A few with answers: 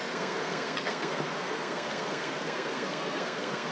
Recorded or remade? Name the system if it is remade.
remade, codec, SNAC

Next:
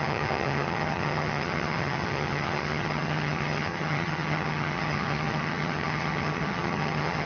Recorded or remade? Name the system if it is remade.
remade, vocoder, HiFi-GAN